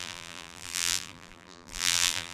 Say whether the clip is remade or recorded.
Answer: remade